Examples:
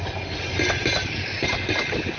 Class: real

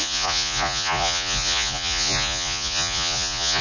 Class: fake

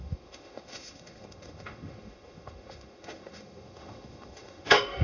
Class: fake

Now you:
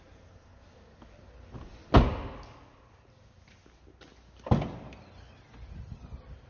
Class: real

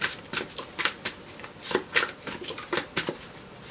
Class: real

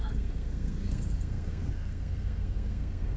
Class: fake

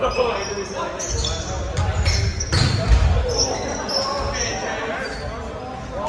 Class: real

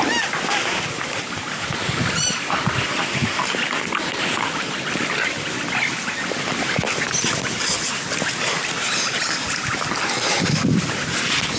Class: real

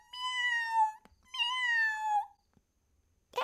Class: real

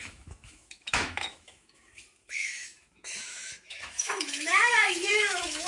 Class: fake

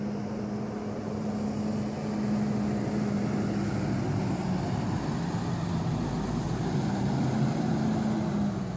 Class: real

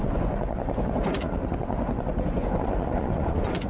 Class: fake